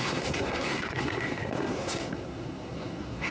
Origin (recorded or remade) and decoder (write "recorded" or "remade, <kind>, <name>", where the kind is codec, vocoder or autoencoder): remade, codec, SNAC